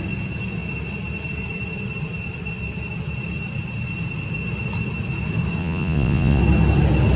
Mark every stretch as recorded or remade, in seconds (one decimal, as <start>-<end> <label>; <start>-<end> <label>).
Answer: 0.0-5.6 recorded; 5.6-6.4 remade; 6.4-7.2 recorded